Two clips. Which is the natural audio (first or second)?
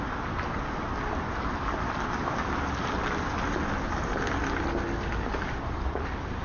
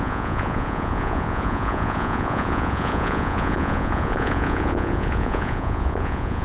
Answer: first